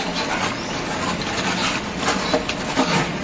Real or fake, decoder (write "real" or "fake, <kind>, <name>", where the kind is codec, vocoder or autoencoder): real